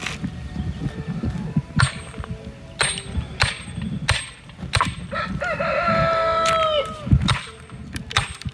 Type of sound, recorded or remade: recorded